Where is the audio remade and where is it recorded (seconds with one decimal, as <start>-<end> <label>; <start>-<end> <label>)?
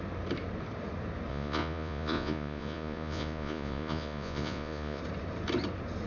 0.0-1.3 recorded; 1.3-5.0 remade; 5.0-6.1 recorded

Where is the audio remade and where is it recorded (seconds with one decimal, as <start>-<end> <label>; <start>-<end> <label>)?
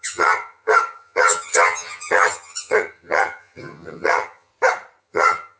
0.0-4.5 remade; 4.5-5.0 recorded; 5.0-5.6 remade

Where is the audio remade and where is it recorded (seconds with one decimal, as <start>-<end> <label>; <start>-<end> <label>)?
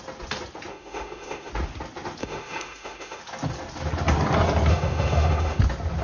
0.0-0.7 recorded; 0.7-1.5 remade; 1.5-2.2 recorded; 2.2-3.2 remade; 3.2-4.7 recorded; 4.7-5.6 remade; 5.6-6.0 recorded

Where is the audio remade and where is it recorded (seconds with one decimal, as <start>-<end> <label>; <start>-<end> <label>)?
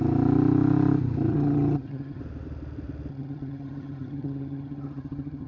0.0-1.3 recorded; 1.3-2.2 remade; 2.2-3.1 recorded; 3.1-5.5 remade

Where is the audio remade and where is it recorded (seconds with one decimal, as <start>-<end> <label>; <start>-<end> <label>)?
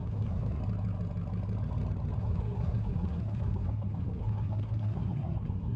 0.0-0.6 remade; 0.6-2.2 recorded; 2.2-5.8 remade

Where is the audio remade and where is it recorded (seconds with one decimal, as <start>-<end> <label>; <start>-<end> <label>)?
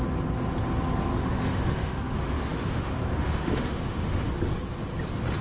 0.0-1.1 recorded; 1.1-4.3 remade; 4.3-5.4 recorded